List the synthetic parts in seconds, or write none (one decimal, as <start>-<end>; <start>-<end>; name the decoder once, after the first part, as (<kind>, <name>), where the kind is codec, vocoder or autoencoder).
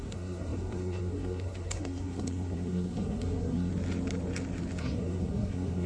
0.0-3.7 (codec, SNAC); 4.8-5.9